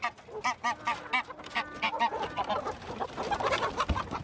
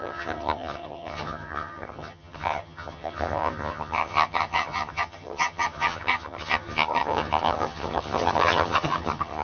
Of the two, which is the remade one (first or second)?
second